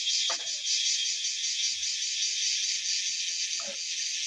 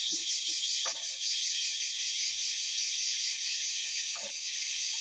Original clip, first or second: first